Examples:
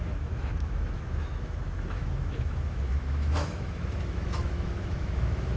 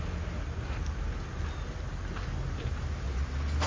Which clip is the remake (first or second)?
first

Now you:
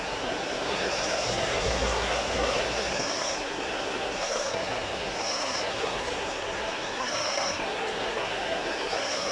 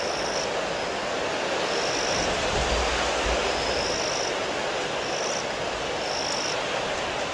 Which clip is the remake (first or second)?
first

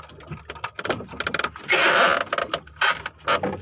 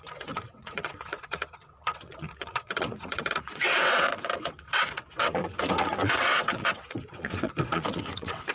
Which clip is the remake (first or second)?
second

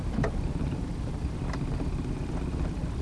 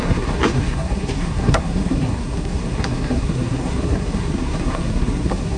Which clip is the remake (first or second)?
second